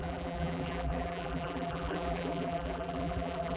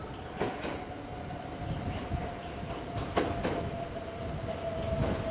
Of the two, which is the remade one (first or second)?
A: first